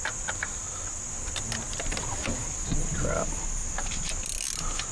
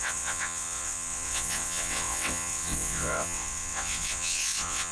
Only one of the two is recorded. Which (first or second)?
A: first